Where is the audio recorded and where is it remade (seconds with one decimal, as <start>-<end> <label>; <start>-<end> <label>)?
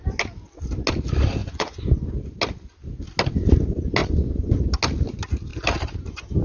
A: 0.0-1.4 recorded; 1.4-2.1 remade; 2.1-4.0 recorded; 4.0-4.6 remade; 4.6-6.4 recorded